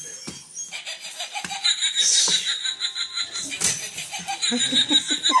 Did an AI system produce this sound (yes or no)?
no